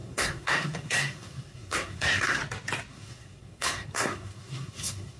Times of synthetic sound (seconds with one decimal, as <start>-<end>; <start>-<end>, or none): 0.0-2.4; 2.9-5.2